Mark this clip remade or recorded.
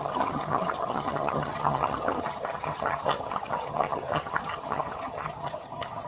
remade